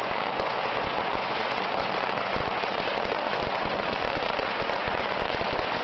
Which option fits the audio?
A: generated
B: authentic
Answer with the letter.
A